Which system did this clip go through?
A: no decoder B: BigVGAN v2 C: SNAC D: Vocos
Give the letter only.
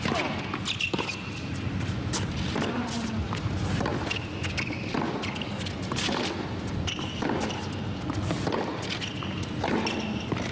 A